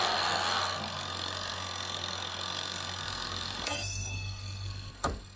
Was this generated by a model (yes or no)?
yes